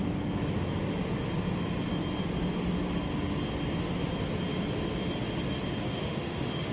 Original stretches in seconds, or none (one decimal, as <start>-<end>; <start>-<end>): 0.0-6.0